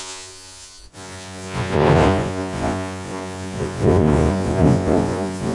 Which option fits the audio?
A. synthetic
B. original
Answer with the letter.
A